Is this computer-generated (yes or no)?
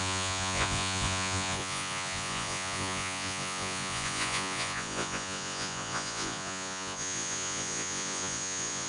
yes